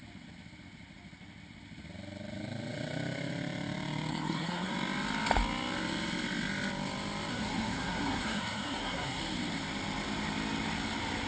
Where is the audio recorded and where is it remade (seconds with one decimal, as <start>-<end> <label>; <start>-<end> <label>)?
0.0-4.1 recorded; 4.1-4.7 remade; 4.7-7.3 recorded; 7.3-9.2 remade; 9.2-11.3 recorded